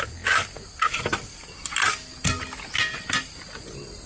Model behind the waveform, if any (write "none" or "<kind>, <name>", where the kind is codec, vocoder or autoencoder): none